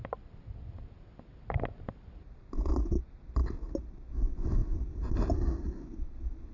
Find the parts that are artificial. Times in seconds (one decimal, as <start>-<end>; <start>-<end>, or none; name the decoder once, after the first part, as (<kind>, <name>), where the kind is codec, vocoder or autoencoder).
none